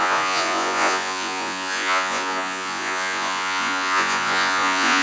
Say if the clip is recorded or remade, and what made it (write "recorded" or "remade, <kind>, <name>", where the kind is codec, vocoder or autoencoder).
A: remade, vocoder, Vocos